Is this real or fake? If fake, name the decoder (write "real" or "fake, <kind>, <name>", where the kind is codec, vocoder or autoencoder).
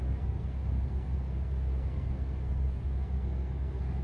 fake, codec, SNAC